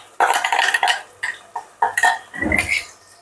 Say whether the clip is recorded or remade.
recorded